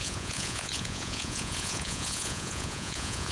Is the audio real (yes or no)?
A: no